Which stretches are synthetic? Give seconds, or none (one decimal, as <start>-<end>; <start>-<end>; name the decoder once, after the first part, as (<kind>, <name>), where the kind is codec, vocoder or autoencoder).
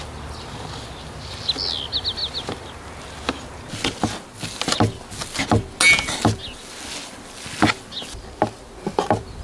none